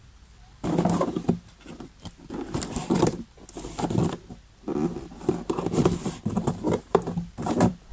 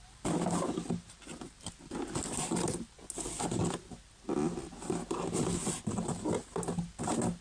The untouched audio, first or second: second